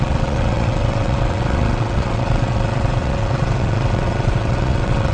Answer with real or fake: fake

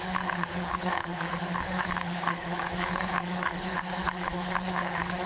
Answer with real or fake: fake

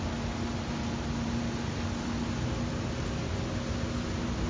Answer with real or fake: real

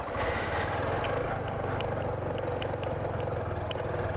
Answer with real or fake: real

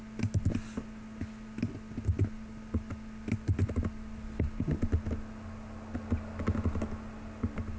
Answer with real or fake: real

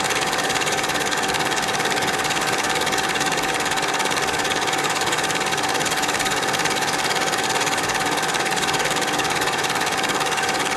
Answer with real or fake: fake